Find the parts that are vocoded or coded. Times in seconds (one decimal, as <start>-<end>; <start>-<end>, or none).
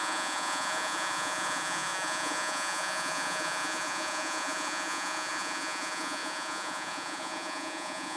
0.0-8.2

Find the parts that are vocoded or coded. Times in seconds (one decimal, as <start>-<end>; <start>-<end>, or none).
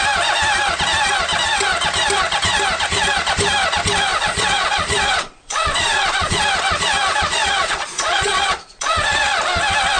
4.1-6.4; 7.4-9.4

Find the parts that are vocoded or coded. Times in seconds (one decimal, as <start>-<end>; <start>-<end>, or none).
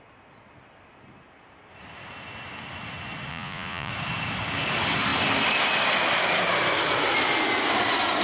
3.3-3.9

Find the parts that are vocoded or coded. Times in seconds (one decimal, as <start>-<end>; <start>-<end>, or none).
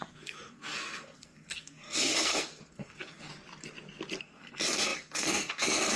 0.0-3.3; 4.2-6.0